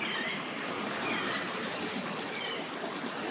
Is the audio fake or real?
real